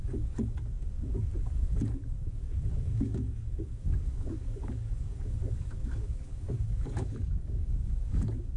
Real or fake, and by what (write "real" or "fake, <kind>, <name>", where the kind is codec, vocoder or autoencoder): fake, codec, DAC